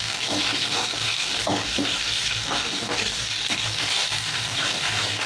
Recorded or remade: remade